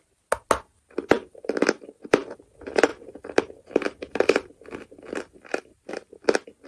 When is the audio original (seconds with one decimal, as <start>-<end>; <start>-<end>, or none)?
0.0-2.9; 5.9-6.7